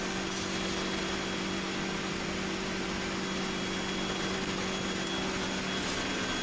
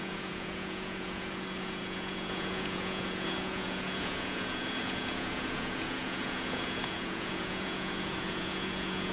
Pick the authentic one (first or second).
first